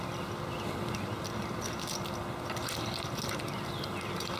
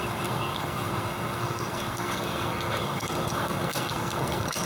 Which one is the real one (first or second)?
first